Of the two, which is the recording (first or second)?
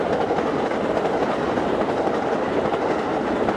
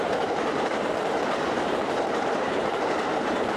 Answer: first